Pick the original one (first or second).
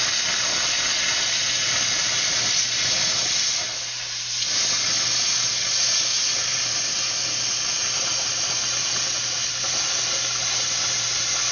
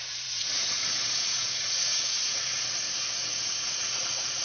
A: first